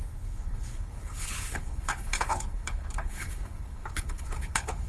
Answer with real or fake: fake